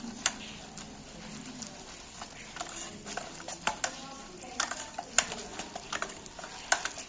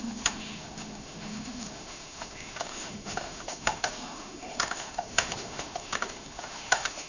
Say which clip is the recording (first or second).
first